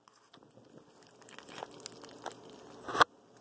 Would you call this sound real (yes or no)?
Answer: yes